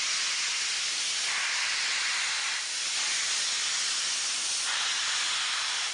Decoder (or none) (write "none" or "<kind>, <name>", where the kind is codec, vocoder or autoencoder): none